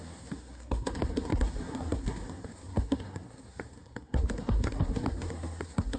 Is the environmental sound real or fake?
fake